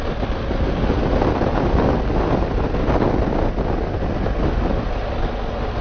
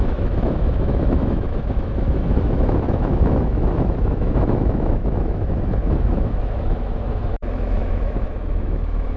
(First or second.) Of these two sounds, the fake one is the second